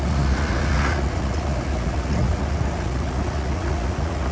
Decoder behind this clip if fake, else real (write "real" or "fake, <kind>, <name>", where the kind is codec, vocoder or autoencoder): fake, vocoder, Vocos